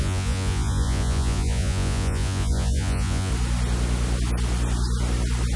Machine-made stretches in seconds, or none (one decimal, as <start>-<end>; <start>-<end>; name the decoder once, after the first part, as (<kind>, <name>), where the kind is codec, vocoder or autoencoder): 0.0-3.3 (vocoder, Vocos)